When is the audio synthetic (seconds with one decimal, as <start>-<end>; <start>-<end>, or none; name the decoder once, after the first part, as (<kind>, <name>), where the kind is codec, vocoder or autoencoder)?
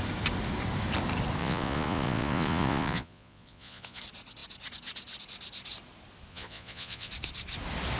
1.4-4.0 (vocoder, Vocos); 6.3-7.1